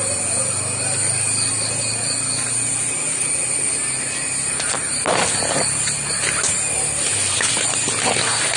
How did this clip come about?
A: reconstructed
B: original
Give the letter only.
B